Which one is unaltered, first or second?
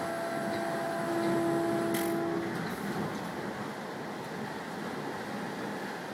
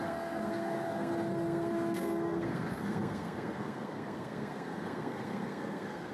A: first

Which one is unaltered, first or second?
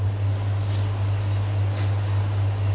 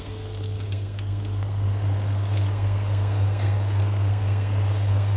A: first